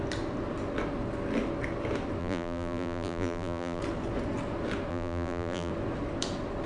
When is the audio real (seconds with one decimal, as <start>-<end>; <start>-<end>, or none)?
0.0-2.2; 3.8-4.9; 5.7-6.7